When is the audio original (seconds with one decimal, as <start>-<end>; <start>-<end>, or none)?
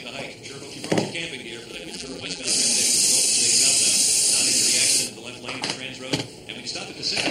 0.0-1.7; 2.5-7.3